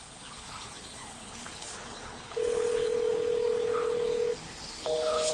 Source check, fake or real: fake